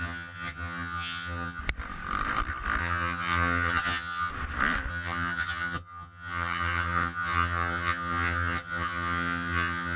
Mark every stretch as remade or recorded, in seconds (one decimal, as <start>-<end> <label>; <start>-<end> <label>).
0.0-1.6 remade; 1.6-2.8 recorded; 2.8-4.3 remade; 4.3-4.9 recorded; 4.9-10.0 remade